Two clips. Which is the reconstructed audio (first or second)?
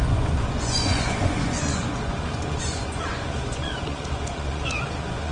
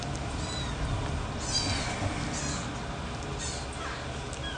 first